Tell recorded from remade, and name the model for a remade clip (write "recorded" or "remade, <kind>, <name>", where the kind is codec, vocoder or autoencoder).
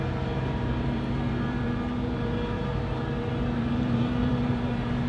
remade, vocoder, BigVGAN v2